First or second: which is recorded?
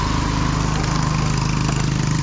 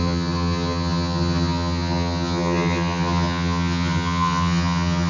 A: first